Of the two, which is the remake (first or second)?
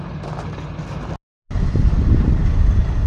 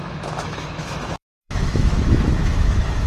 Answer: second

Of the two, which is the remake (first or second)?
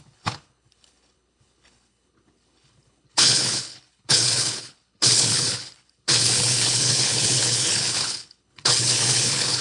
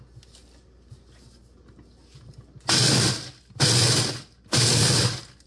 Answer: first